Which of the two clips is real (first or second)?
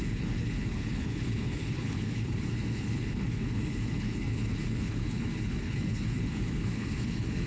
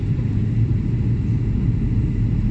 second